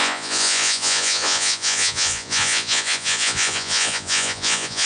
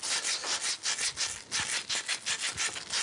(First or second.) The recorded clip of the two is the second